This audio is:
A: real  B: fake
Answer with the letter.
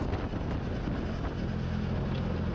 A